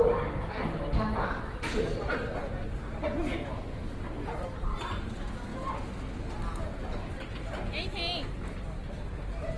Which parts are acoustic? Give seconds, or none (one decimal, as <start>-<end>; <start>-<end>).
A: 0.0-9.6